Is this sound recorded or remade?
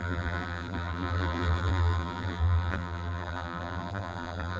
remade